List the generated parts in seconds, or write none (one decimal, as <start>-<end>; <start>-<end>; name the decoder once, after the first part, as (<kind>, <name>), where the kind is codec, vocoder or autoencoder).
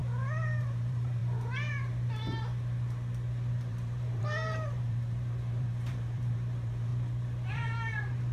0.6-1.2 (vocoder, BigVGAN v2); 3.5-6.9; 7.5-8.3